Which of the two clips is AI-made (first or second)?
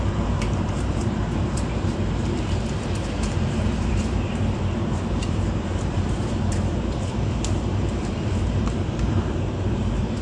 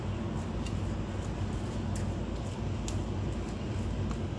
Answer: first